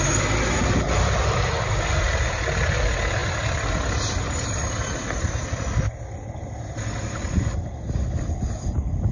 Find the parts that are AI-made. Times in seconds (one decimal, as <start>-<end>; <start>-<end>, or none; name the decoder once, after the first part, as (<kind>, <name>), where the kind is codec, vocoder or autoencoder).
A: none